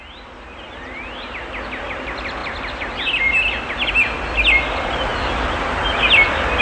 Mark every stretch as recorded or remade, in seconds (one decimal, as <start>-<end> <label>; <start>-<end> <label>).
0.0-6.6 recorded